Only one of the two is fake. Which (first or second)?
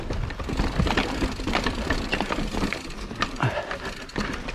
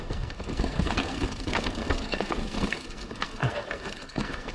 second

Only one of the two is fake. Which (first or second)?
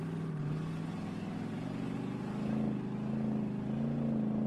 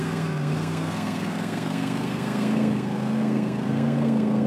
second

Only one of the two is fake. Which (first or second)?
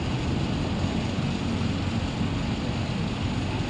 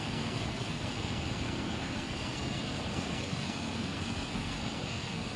second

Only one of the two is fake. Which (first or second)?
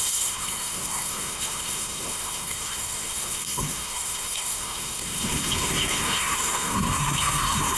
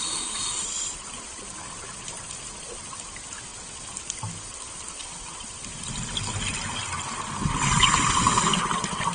first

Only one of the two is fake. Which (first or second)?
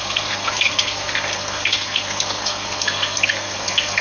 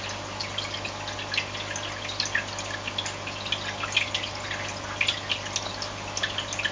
first